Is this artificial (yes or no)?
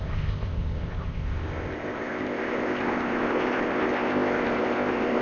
yes